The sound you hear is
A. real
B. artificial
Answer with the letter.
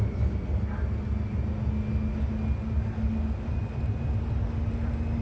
A